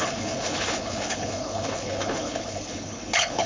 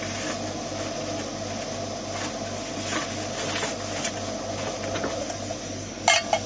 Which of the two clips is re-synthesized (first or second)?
first